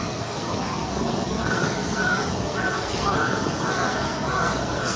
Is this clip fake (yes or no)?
yes